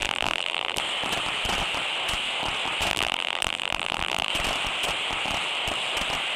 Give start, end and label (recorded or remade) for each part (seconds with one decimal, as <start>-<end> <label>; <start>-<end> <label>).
0.0-0.8 remade; 0.8-2.9 recorded; 2.9-4.3 remade; 4.3-6.4 recorded